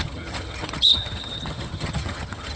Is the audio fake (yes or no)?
yes